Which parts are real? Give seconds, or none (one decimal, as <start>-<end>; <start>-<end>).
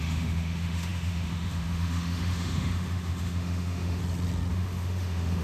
4.0-4.5